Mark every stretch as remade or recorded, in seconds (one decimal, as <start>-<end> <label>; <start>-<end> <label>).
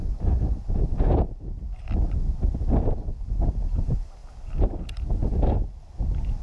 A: 0.0-6.4 recorded